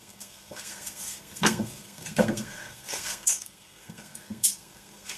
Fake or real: fake